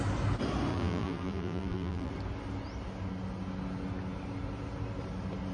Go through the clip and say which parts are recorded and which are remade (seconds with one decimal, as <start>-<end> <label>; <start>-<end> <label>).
0.0-0.7 recorded; 0.7-2.1 remade; 2.1-5.5 recorded